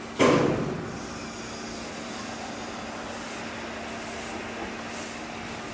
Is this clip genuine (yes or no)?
yes